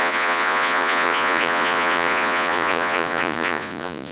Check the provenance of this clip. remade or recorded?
remade